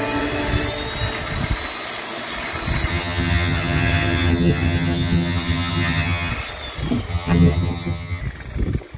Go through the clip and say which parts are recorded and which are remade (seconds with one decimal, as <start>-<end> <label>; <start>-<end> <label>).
0.0-2.9 recorded; 2.9-6.3 remade; 6.3-7.1 recorded; 7.1-8.2 remade; 8.2-9.0 recorded